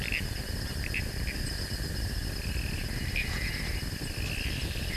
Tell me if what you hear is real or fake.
real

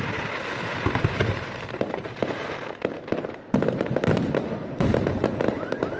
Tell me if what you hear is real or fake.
fake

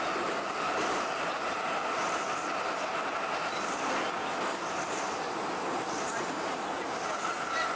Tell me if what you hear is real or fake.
real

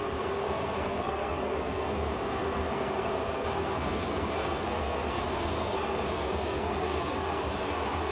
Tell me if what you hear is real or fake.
fake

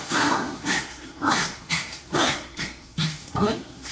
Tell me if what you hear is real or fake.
fake